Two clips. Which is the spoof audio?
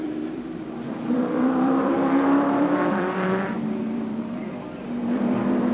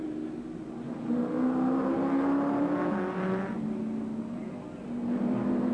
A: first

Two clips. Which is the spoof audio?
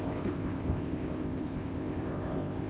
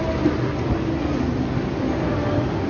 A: first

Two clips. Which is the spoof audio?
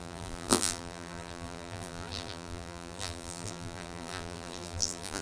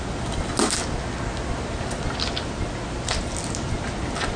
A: first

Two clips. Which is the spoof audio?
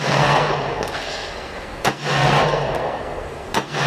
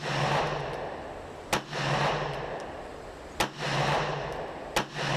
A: first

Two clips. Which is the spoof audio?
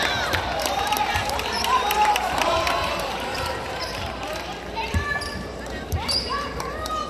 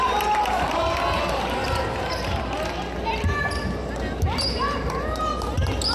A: first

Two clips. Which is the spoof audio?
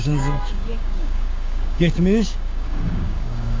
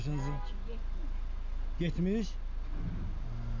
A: first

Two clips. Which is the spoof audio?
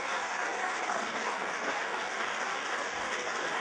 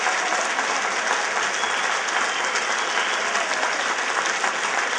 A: first